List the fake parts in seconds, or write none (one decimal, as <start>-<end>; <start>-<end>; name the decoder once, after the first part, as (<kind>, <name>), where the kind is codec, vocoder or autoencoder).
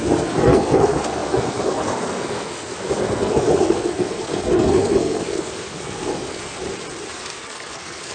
0.0-6.6 (codec, SNAC); 7.2-8.1